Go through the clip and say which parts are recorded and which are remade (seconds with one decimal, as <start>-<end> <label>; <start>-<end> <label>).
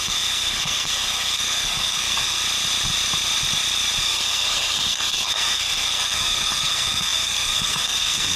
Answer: 0.0-2.4 remade; 2.4-4.0 recorded; 4.0-8.4 remade